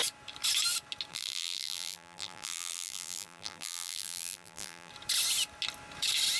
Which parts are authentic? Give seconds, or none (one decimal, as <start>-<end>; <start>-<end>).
0.0-1.1; 4.9-6.4